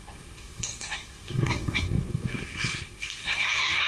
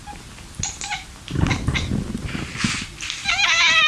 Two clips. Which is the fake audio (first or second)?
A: first